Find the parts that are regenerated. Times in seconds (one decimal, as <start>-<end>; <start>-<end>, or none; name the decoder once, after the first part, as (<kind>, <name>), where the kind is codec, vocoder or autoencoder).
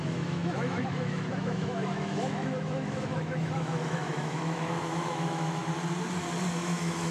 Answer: 0.0-5.6 (autoencoder, DAC-VAE); 6.5-7.1